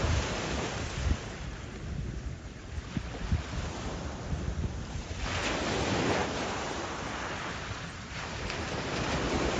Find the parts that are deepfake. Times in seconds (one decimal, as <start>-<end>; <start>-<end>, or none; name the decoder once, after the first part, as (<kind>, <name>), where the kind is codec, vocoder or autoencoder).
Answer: 6.2-6.8 (vocoder, BigVGAN v2); 7.6-8.6